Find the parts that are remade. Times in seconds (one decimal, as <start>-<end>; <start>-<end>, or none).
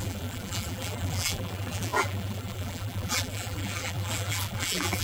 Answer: 0.0-5.0